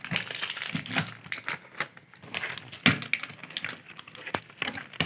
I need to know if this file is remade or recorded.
recorded